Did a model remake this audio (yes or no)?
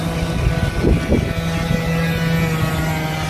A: no